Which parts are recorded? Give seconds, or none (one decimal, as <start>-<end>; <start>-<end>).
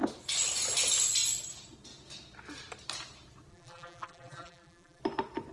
0.0-3.5; 5.0-5.5